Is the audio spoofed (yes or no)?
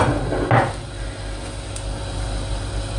no